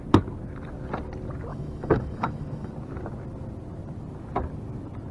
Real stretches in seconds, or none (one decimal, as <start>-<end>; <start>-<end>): 0.0-1.5; 2.7-5.1